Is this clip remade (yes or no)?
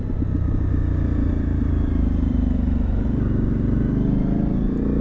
yes